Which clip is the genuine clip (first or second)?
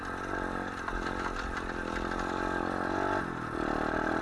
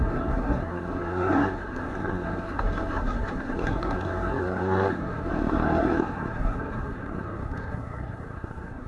first